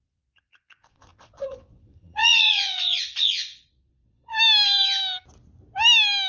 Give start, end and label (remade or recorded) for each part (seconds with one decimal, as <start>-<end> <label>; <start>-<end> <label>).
0.0-4.3 remade; 4.3-6.3 recorded